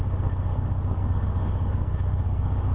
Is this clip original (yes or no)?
no